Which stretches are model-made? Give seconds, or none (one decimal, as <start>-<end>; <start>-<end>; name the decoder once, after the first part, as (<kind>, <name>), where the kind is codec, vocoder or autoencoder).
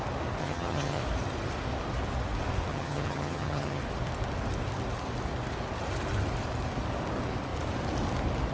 0.4-1.0 (vocoder, HiFi-GAN); 2.7-3.8